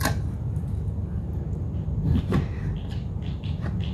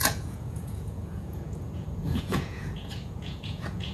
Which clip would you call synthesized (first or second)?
second